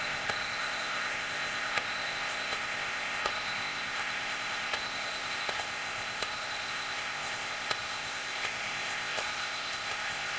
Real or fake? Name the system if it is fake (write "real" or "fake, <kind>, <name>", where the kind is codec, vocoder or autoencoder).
fake, codec, ZipCodec